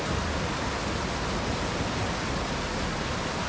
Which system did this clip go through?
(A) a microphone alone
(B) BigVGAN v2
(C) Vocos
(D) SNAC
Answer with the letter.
A